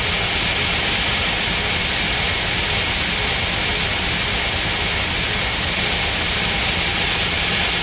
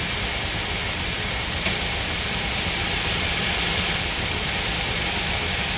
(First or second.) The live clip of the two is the first